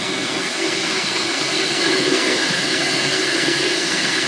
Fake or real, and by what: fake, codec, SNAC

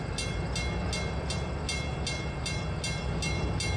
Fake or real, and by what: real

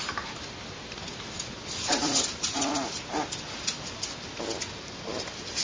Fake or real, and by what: real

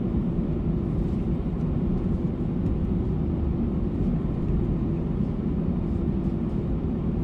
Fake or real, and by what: real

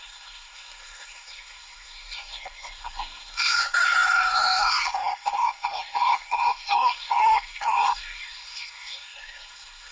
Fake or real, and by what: fake, codec, SNAC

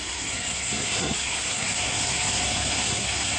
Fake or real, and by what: fake, codec, SNAC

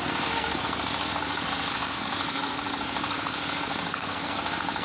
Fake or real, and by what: fake, codec, SNAC